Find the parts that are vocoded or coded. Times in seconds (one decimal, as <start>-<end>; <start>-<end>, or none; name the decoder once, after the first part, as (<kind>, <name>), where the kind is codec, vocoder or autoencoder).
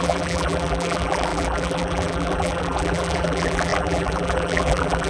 0.0-5.1 (vocoder, BigVGAN v2)